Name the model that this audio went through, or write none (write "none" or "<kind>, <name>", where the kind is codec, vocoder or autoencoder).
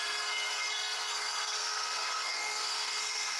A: codec, SNAC